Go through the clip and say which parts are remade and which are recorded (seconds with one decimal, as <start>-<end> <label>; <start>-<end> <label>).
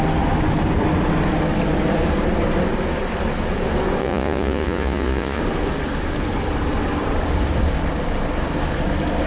0.0-4.0 recorded; 4.0-5.4 remade; 5.4-9.3 recorded